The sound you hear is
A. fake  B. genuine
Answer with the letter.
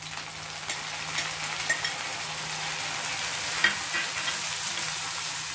B